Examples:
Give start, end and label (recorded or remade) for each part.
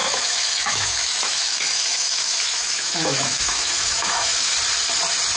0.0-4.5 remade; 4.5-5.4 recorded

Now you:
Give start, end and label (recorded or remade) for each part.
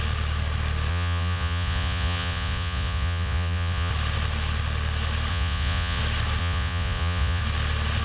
0.0-0.9 recorded; 0.9-3.9 remade; 3.9-5.3 recorded; 5.3-6.0 remade; 6.0-6.4 recorded; 6.4-7.4 remade; 7.4-8.0 recorded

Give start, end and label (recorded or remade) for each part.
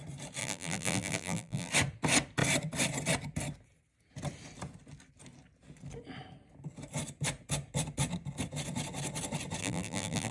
0.0-0.4 recorded; 0.4-1.7 remade; 1.7-9.6 recorded; 9.6-10.3 remade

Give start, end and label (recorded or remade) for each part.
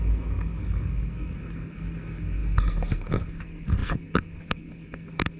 0.0-5.4 remade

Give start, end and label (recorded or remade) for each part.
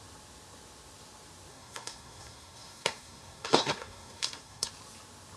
0.0-1.5 recorded; 1.5-4.7 remade; 4.7-5.4 recorded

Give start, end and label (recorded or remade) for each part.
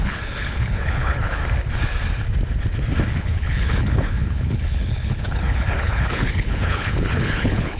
0.0-1.4 remade; 1.4-3.2 recorded; 3.2-7.8 remade